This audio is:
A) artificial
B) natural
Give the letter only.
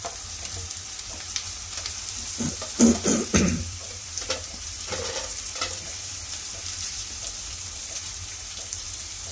A